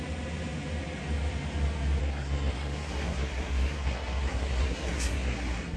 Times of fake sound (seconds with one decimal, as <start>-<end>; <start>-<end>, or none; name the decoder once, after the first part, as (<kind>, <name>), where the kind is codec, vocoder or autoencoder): 2.0-5.8 (codec, SNAC)